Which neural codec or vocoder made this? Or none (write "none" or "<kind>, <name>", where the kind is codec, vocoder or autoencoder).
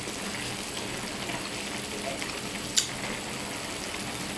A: none